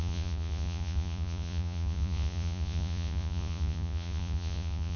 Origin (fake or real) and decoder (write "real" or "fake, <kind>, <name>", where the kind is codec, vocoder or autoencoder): fake, vocoder, Vocos